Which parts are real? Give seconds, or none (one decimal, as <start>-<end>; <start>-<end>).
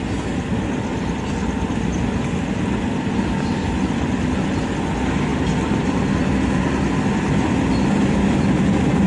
0.0-9.1